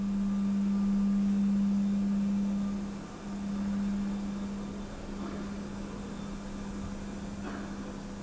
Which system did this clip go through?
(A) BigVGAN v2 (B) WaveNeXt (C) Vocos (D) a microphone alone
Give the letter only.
D